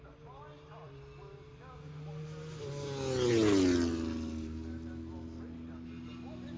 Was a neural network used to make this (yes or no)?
no